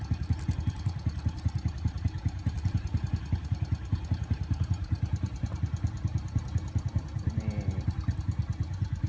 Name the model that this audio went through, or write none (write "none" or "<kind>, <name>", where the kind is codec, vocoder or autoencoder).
vocoder, BigVGAN v2